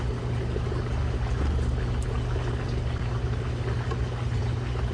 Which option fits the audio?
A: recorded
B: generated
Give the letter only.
A